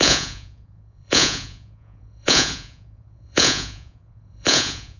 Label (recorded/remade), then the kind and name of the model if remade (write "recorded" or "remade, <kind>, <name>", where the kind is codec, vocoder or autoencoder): remade, vocoder, Vocos